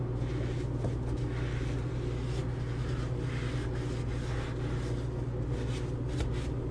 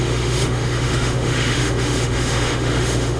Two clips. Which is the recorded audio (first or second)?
first